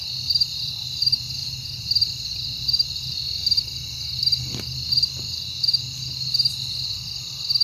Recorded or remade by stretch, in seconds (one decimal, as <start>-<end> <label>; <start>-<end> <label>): 0.0-7.6 recorded